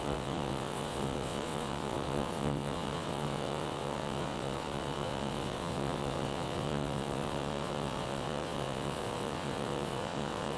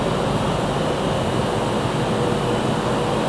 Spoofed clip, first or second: first